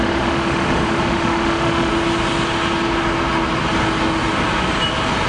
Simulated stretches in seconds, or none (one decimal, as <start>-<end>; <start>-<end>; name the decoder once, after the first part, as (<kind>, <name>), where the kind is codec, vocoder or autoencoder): 0.0-1.9 (autoencoder, DAC-VAE)